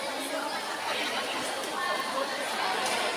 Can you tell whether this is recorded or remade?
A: recorded